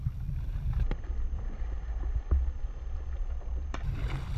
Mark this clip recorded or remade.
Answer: recorded